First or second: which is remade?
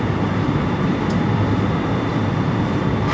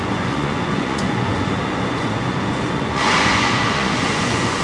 second